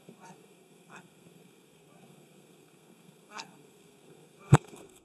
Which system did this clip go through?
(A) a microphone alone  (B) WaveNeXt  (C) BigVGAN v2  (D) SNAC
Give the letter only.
D